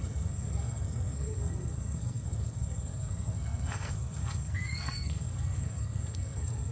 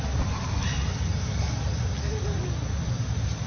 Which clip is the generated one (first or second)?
first